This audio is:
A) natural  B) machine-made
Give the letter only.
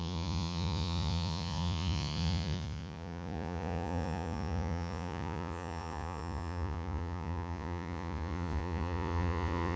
B